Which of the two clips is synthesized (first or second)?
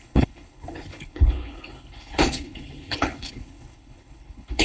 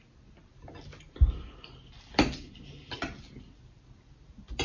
first